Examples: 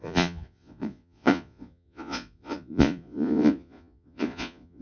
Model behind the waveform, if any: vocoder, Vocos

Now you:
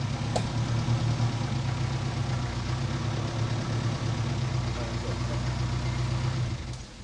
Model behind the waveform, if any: none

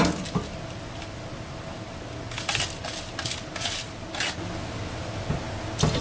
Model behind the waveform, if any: none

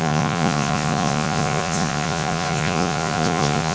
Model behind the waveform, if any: vocoder, Vocos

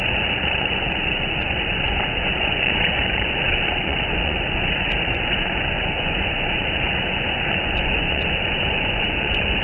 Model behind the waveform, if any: vocoder, Vocos